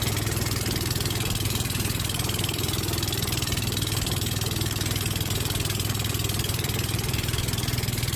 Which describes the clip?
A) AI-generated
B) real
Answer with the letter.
A